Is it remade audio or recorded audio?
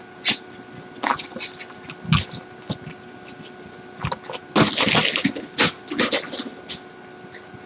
recorded